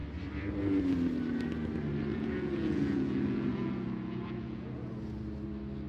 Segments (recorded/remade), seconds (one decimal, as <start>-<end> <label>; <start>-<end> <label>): 0.0-2.1 recorded; 2.1-4.9 remade; 4.9-5.9 recorded